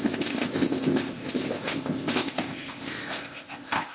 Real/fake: fake